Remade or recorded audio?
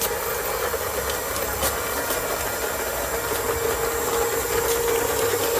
recorded